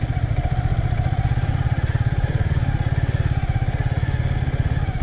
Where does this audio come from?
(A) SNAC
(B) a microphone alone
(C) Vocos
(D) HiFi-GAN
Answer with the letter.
B